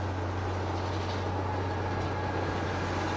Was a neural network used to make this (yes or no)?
no